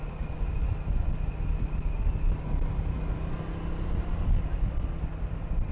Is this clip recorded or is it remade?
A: recorded